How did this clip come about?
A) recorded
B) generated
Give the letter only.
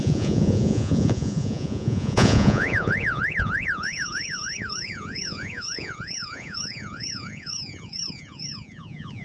B